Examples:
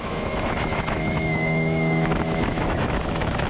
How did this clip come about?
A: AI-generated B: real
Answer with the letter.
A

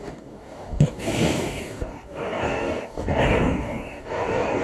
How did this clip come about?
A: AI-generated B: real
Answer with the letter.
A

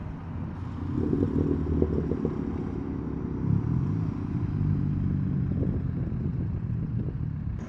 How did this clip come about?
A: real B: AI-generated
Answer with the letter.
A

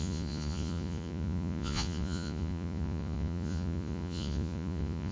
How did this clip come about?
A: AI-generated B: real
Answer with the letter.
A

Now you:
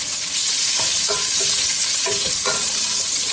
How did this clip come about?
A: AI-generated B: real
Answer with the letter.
A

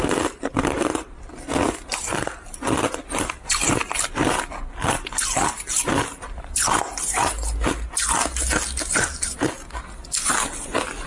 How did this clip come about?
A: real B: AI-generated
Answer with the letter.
A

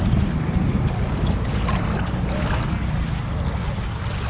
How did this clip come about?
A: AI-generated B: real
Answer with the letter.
B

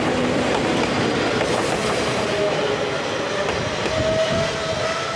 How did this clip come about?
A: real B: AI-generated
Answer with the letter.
A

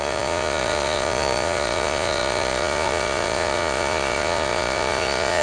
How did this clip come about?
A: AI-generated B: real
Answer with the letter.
A